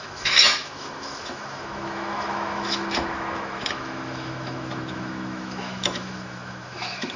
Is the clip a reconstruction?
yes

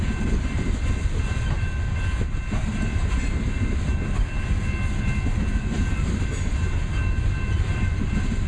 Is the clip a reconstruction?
no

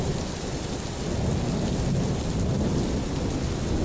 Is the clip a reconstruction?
no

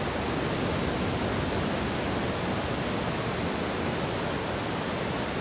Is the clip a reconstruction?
no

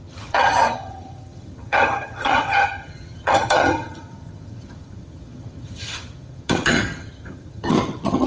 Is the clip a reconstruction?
yes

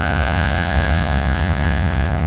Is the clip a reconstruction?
yes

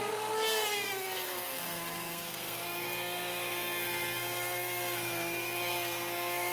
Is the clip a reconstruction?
yes